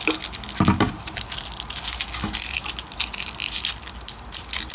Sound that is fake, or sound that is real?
real